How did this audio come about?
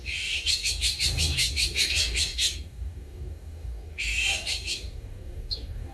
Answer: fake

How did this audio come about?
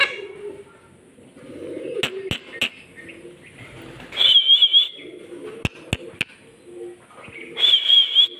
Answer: real